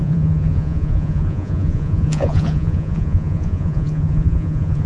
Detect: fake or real fake